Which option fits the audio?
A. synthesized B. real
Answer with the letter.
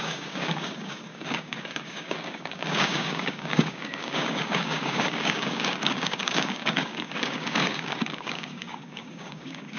A